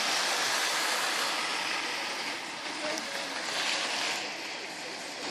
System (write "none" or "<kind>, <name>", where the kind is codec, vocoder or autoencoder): none